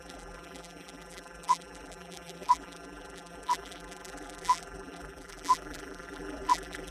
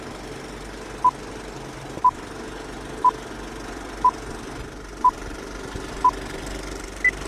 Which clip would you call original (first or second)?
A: second